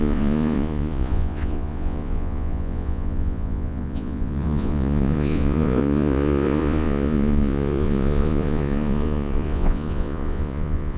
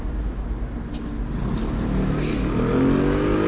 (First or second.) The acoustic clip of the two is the second